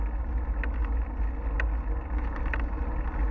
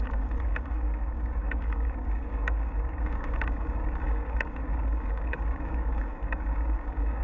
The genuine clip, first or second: first